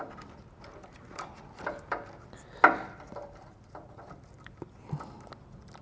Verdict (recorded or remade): recorded